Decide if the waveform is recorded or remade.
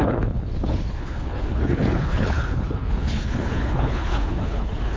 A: remade